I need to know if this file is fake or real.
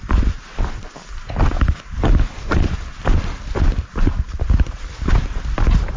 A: real